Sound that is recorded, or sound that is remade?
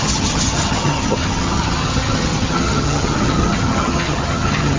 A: remade